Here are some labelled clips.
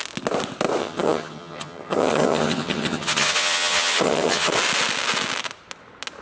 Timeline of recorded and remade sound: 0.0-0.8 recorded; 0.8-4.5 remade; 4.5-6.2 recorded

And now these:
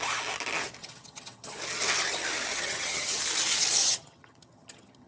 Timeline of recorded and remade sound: 0.0-0.8 recorded; 0.8-1.6 remade; 1.6-2.5 recorded; 2.5-3.2 remade; 3.2-3.8 recorded; 3.8-5.1 remade

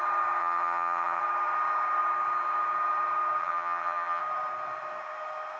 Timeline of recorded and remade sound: 0.0-0.4 recorded; 0.4-1.2 remade; 1.2-3.4 recorded; 3.4-4.2 remade; 4.2-5.6 recorded

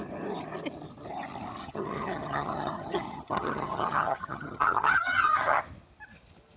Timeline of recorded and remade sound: 0.0-1.6 recorded; 1.6-5.6 remade; 5.6-6.6 recorded

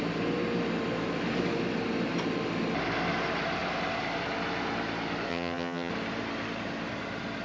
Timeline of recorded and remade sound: 0.0-5.3 recorded; 5.3-5.9 remade; 5.9-7.4 recorded